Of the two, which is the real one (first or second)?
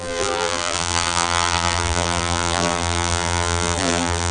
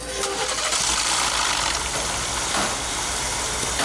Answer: second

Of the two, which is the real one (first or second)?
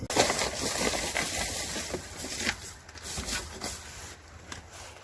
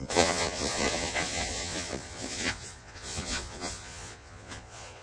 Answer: first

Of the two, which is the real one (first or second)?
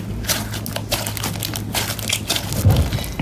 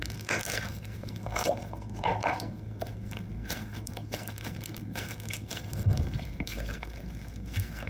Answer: first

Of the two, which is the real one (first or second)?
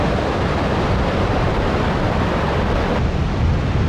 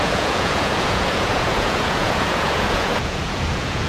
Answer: first